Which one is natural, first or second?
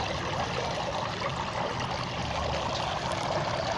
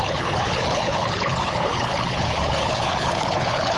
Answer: first